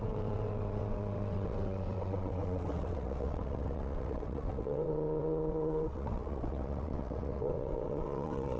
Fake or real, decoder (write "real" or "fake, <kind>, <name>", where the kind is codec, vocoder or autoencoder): fake, vocoder, WaveNeXt